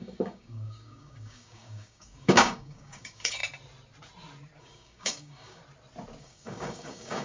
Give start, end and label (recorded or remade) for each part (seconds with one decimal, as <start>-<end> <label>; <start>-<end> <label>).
0.0-3.4 remade; 3.4-4.6 recorded; 4.6-5.6 remade; 5.6-6.2 recorded; 6.2-7.2 remade